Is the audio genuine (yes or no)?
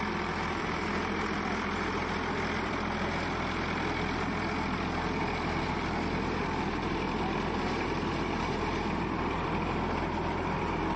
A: no